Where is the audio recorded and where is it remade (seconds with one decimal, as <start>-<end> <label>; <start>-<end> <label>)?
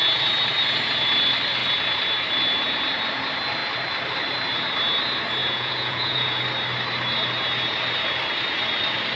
0.0-5.4 recorded; 5.4-6.4 remade; 6.4-9.2 recorded